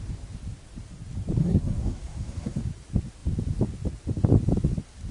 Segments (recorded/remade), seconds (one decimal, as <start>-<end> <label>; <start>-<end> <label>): 0.0-1.4 recorded; 1.4-2.6 remade; 2.6-5.1 recorded